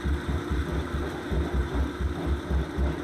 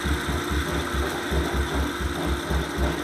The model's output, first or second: first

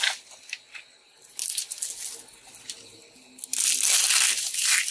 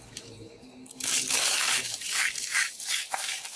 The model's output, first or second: second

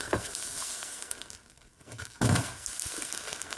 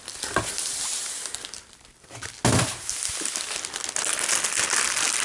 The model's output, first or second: first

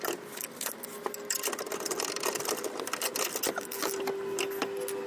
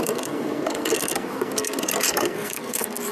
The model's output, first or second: second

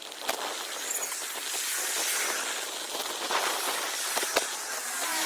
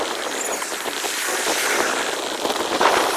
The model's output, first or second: second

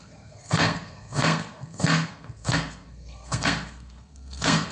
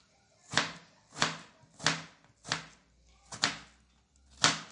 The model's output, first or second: first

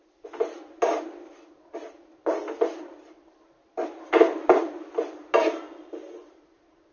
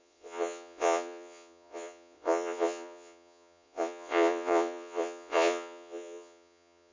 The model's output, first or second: second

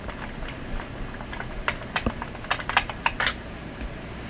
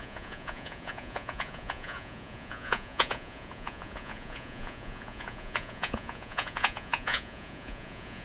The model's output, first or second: second